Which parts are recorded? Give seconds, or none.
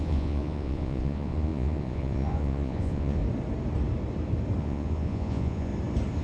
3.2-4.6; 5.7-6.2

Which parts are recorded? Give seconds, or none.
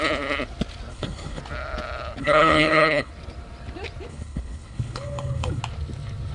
0.0-0.9; 1.4-2.2; 3.1-4.1; 5.6-6.3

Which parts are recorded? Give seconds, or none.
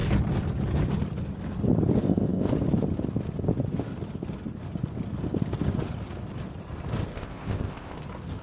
0.0-2.0; 2.5-7.1; 8.0-8.4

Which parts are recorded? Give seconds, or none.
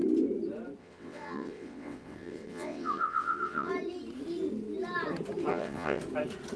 0.0-0.8; 3.7-5.5; 6.0-6.6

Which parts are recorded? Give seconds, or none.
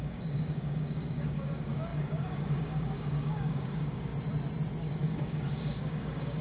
4.1-4.8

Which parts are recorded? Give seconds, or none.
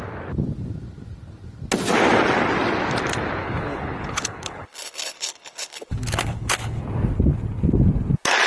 0.0-3.4; 6.8-8.5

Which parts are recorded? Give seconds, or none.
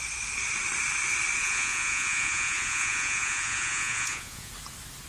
0.0-1.4; 4.5-5.1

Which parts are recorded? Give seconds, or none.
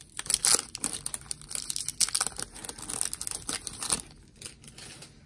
0.0-5.3